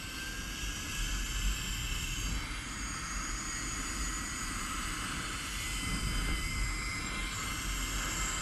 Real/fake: real